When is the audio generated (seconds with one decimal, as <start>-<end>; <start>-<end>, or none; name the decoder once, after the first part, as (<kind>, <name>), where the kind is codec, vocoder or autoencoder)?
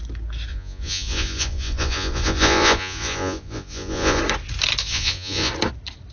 0.5-4.2 (vocoder, Vocos); 4.8-5.5